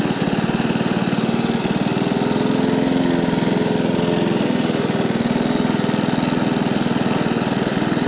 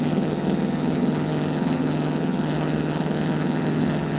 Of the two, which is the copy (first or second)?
second